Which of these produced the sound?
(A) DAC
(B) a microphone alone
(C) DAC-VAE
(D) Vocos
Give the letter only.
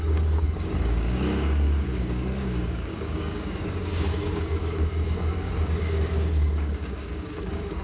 A